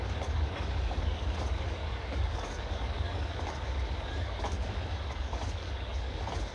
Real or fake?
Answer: fake